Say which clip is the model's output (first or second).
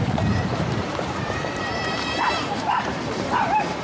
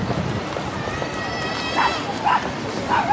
first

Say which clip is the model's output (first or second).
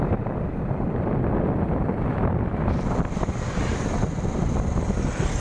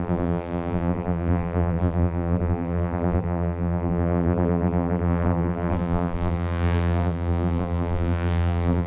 second